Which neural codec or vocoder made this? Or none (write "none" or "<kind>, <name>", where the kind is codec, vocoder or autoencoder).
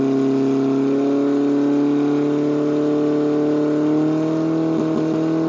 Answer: none